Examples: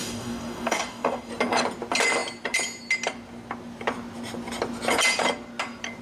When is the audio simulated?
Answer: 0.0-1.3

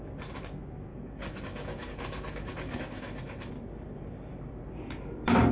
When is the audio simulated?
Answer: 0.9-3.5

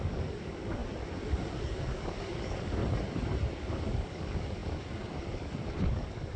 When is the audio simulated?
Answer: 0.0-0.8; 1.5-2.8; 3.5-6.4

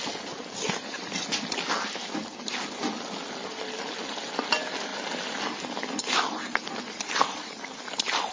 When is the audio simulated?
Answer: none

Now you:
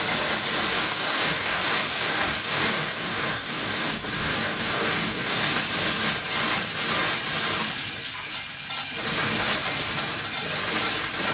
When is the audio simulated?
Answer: 0.7-5.6

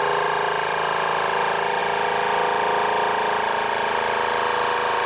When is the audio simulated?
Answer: none

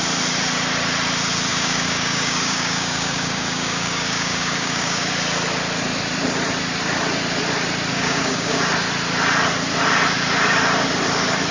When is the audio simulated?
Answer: 1.5-5.1; 7.9-8.6